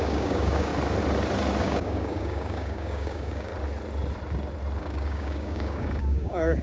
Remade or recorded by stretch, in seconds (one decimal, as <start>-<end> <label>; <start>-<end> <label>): 0.0-0.7 remade; 0.7-1.6 recorded; 1.6-3.5 remade; 3.5-4.8 recorded; 4.8-6.6 remade